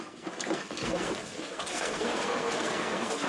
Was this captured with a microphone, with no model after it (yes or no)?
no